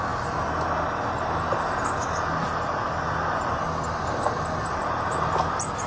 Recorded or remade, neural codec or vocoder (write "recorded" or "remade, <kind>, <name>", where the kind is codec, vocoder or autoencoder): recorded